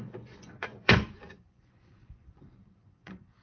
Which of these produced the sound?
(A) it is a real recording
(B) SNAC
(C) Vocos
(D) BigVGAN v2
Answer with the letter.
C